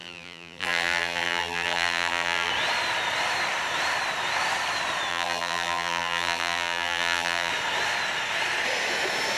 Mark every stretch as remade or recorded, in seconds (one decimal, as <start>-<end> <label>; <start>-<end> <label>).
0.0-2.5 remade; 2.5-5.1 recorded; 5.1-7.5 remade; 7.5-9.4 recorded